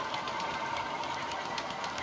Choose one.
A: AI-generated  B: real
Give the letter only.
B